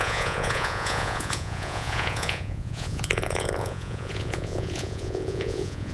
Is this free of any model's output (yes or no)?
no